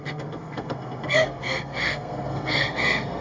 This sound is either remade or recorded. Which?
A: remade